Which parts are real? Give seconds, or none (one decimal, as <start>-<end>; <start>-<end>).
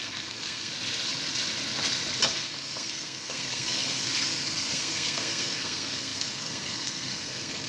0.7-2.3